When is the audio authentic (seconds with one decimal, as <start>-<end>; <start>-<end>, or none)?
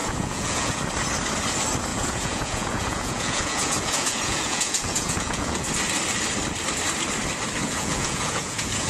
0.8-1.9; 5.7-7.6